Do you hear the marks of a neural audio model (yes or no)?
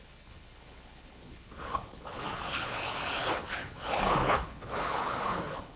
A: yes